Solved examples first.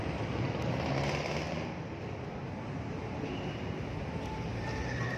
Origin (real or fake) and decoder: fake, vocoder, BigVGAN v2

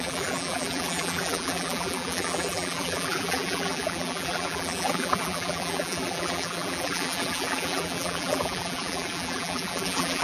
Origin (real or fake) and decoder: fake, vocoder, BigVGAN v2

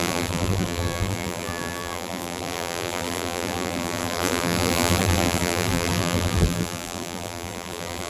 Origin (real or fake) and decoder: fake, vocoder, BigVGAN v2